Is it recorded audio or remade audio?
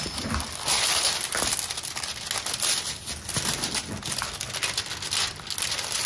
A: recorded